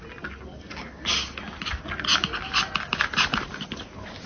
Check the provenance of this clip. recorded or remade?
recorded